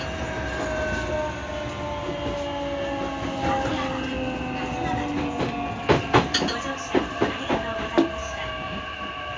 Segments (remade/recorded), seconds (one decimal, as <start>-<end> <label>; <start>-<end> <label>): 0.0-8.2 recorded; 8.2-8.8 remade; 8.8-9.4 recorded